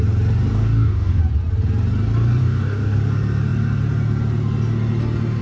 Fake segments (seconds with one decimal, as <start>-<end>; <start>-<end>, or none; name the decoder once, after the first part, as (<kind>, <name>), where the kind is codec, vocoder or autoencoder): 0.5-1.2 (codec, DAC); 2.4-3.0